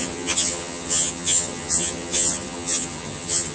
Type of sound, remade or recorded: remade